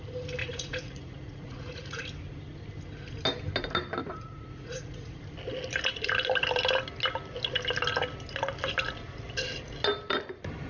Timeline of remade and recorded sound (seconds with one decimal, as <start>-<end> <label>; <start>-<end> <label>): 0.0-0.4 recorded; 0.4-2.0 remade; 2.0-4.0 recorded; 4.0-5.2 remade; 5.2-10.7 recorded